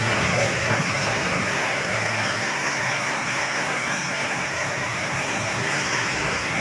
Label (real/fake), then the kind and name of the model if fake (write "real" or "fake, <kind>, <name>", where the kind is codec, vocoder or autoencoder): fake, codec, SNAC